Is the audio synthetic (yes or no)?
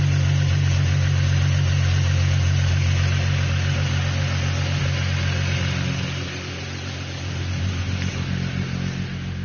no